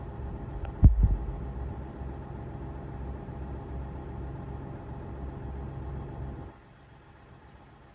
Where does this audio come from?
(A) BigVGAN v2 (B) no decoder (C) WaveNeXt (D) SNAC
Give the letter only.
B